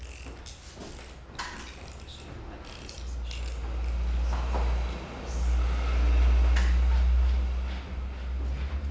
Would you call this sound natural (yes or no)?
yes